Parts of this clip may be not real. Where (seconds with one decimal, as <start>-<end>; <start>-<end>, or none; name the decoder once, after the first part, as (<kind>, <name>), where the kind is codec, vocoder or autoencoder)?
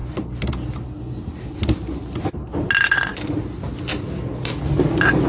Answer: none